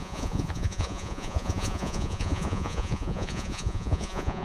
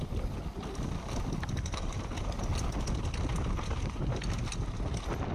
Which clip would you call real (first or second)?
second